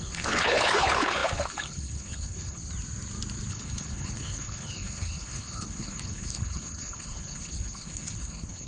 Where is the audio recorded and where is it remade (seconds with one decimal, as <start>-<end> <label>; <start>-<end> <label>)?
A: 0.0-2.6 remade; 2.6-3.5 recorded; 3.5-8.7 remade